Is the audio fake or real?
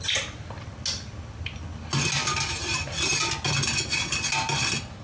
real